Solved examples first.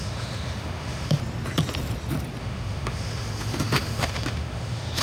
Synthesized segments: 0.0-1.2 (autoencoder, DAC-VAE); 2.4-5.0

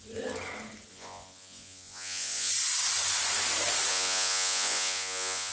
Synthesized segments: 0.9-2.5 (vocoder, Vocos); 3.9-5.5

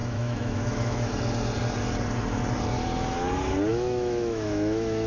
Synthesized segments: 0.0-1.1 (autoencoder, DAC-VAE); 3.7-5.1

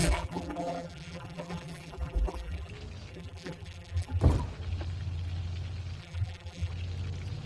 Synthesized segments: 0.0-2.7 (vocoder, BigVGAN v2); 3.1-4.2; 6.0-6.7

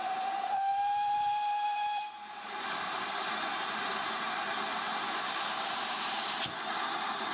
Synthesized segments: 0.0-7.3 (vocoder, BigVGAN v2)

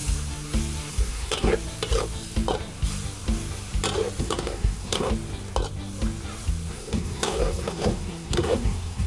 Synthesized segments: 0.9-1.5 (codec, SNAC); 4.2-5.1; 6.7-9.1

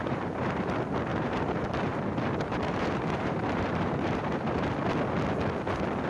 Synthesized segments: 0.0-0.6 (vocoder, BigVGAN v2); 1.1-4.7

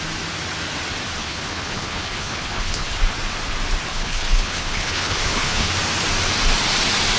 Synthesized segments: 1.2-3.0 (codec, HILCodec); 3.9-5.7